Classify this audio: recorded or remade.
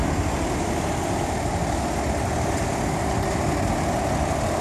recorded